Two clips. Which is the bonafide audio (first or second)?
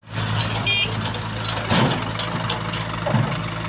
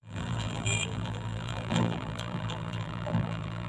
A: first